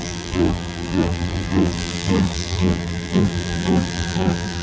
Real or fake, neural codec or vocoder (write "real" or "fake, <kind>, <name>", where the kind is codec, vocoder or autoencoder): fake, vocoder, BigVGAN v2